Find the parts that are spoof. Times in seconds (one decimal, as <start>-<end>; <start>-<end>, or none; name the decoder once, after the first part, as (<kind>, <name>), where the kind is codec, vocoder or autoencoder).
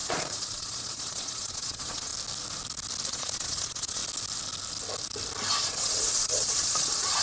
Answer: 0.0-2.1 (vocoder, Vocos); 3.1-4.0; 5.6-7.2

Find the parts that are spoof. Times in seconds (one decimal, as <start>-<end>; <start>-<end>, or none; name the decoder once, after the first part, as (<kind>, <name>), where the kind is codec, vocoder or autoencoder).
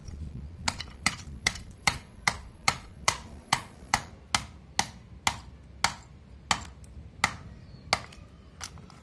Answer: 0.0-4.1 (vocoder, Vocos)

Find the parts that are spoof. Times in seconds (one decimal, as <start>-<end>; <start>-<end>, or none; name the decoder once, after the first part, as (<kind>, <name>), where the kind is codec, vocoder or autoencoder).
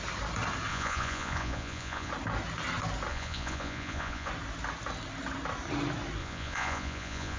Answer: 0.7-2.1 (vocoder, Vocos); 3.1-4.3; 6.2-7.4